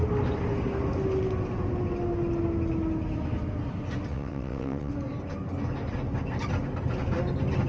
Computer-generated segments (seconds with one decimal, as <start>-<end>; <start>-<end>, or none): 4.1-4.9